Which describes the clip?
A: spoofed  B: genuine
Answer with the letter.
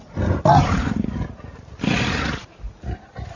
B